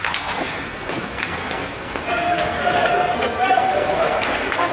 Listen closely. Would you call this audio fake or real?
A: fake